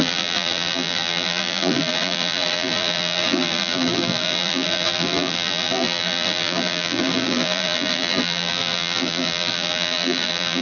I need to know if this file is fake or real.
fake